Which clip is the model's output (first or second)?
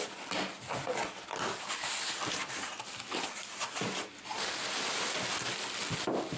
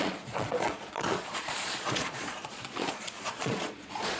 second